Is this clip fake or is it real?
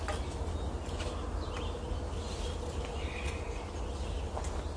real